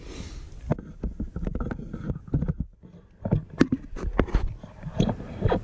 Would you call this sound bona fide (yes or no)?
yes